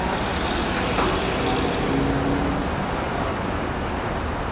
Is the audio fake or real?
real